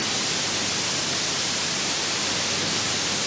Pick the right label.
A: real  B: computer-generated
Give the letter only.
B